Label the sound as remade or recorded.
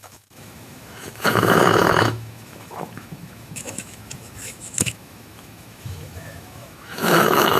remade